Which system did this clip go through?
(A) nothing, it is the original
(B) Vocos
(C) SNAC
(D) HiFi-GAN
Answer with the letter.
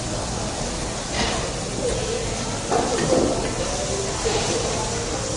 A